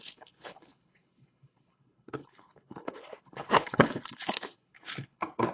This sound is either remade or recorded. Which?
remade